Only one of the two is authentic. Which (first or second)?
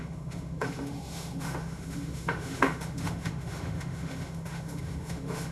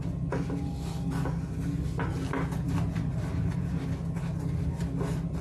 second